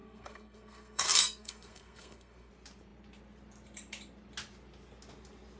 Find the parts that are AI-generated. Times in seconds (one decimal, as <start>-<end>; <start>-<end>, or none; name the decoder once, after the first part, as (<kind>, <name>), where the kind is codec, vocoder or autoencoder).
0.0-2.5 (codec, SNAC)